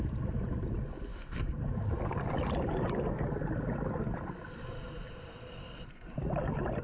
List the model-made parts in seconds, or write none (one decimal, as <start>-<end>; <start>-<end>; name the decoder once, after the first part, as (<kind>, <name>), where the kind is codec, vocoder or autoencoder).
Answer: 0.0-6.8 (vocoder, BigVGAN v2)